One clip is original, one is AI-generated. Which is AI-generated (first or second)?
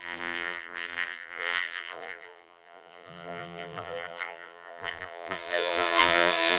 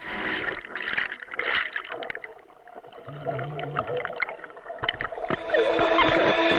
first